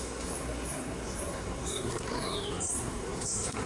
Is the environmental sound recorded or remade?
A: remade